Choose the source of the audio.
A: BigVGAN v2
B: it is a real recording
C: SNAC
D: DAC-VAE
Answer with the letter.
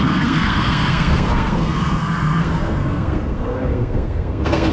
C